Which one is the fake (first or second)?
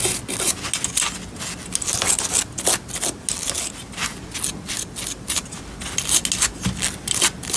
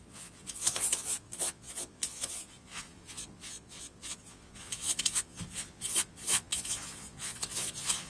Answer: second